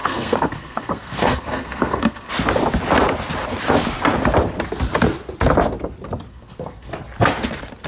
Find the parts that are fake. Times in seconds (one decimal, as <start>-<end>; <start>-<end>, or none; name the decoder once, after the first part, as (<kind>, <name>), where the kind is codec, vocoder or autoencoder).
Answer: 0.0-2.3 (codec, SNAC); 6.3-6.9